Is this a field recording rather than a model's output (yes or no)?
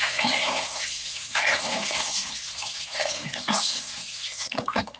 no